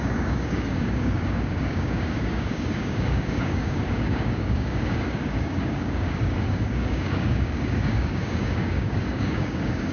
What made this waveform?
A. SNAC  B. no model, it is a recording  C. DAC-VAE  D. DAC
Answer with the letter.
D